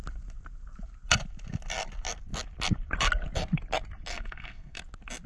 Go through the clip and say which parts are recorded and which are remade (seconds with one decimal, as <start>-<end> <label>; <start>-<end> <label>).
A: 0.0-4.1 recorded; 4.1-4.8 remade; 4.8-5.3 recorded